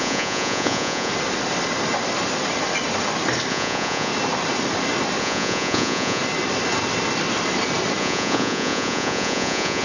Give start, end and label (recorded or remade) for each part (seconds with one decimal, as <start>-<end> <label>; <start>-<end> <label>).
0.0-1.1 remade; 1.1-3.5 recorded; 3.5-4.1 remade; 4.1-5.2 recorded; 5.2-6.2 remade; 6.2-8.0 recorded; 8.0-9.8 remade